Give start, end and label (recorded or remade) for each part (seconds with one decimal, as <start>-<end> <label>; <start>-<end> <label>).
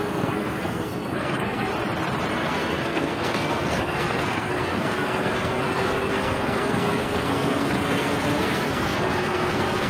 0.0-1.7 remade; 1.7-2.3 recorded; 2.3-9.9 remade